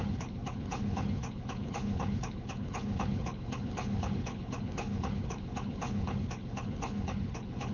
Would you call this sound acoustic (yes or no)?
no